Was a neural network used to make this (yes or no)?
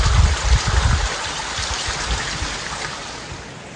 no